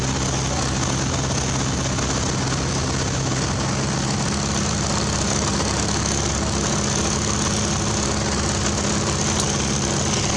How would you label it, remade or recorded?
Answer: recorded